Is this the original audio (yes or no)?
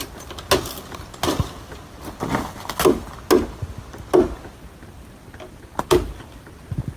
yes